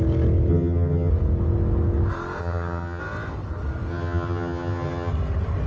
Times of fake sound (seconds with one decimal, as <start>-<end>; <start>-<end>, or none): 0.5-1.1; 2.4-3.0; 3.9-5.1